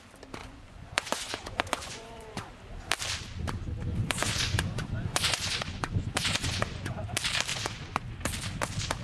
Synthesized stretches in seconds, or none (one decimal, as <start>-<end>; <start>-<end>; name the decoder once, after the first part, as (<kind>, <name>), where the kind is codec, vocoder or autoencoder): 0.4-2.5 (vocoder, Vocos); 4.0-7.0; 7.5-8.1